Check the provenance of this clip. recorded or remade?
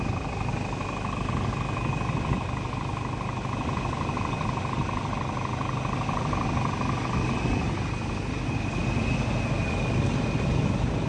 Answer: recorded